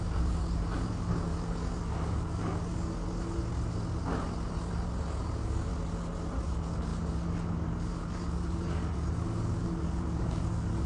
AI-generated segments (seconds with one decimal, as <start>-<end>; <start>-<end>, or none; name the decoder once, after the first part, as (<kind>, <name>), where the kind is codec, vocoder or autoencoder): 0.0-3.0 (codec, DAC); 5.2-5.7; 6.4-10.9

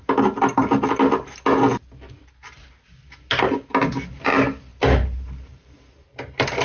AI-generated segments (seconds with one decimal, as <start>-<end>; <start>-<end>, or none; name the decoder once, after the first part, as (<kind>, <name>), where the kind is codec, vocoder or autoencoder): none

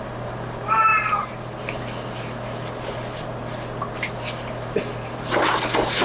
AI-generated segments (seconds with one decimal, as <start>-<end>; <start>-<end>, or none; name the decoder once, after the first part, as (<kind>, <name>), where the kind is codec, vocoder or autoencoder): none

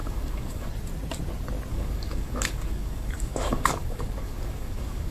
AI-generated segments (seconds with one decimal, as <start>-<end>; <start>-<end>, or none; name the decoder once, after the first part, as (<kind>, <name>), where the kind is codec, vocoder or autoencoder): 0.0-0.7 (codec, DAC); 1.7-5.1

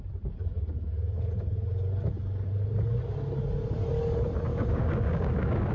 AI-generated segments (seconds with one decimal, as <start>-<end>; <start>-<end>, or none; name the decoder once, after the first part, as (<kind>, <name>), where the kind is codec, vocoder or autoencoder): 4.5-5.7 (codec, DAC)